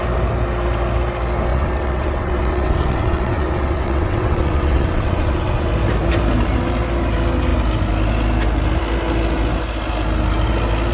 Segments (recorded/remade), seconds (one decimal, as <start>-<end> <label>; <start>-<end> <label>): 0.0-1.5 recorded; 1.5-5.7 remade; 5.7-10.9 recorded